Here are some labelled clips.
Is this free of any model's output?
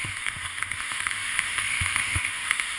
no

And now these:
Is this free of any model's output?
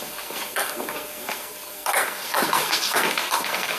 no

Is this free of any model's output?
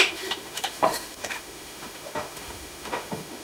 no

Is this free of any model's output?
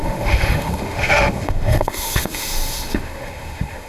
no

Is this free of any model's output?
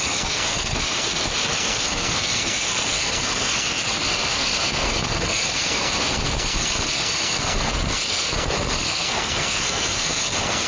no